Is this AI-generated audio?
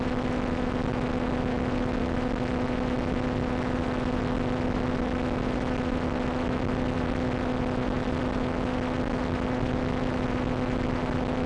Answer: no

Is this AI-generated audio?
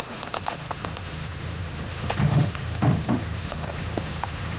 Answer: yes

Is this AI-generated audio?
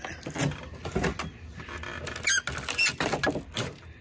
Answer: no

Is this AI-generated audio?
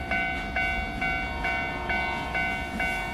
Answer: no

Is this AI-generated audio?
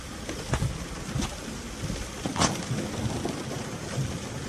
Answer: no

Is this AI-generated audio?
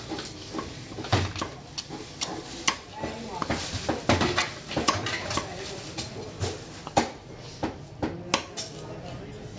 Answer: no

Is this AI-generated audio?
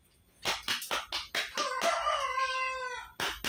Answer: no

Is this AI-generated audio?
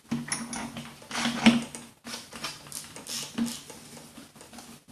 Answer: no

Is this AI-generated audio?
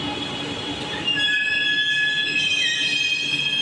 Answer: no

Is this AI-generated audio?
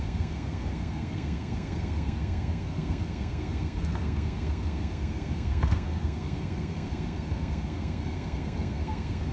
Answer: yes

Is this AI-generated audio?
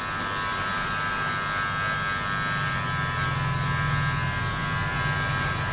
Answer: no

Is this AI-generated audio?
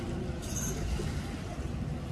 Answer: no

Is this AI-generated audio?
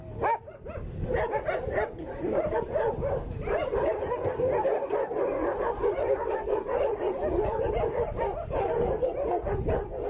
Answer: no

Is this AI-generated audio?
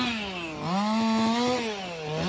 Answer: no